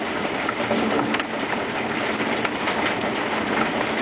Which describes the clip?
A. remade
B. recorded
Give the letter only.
B